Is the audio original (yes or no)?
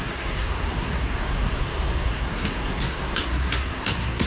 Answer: no